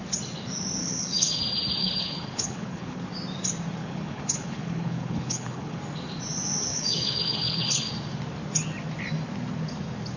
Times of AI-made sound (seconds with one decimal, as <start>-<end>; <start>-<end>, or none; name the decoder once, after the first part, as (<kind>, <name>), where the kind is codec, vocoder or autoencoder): 0.8-1.4 (codec, HILCodec); 1.8-3.0; 3.8-5.8; 6.7-7.9